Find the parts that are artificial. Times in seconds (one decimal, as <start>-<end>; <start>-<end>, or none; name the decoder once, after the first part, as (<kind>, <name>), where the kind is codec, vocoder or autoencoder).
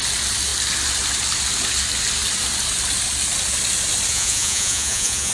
4.1-5.3 (vocoder, Vocos)